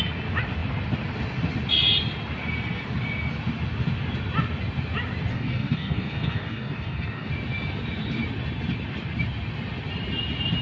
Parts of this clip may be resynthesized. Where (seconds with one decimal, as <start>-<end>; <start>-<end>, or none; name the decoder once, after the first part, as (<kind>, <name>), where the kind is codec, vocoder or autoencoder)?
5.3-7.3 (codec, DAC)